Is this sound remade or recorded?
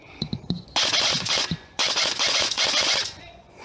remade